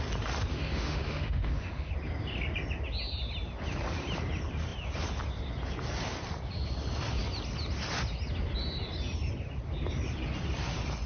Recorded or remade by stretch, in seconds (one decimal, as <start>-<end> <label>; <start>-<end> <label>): 0.0-0.5 recorded; 0.5-1.9 remade; 1.9-11.1 recorded